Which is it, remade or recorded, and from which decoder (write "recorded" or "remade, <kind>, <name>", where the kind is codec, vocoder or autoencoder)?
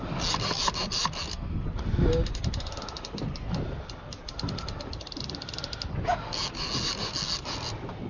recorded